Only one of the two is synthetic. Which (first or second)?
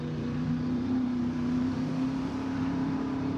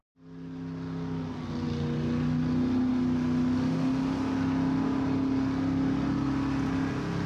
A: first